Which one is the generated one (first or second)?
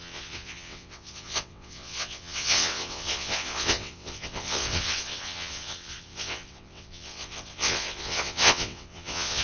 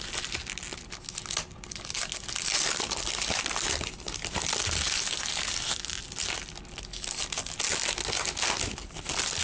first